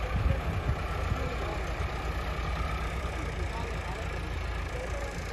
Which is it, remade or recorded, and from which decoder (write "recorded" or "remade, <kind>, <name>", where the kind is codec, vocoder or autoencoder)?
recorded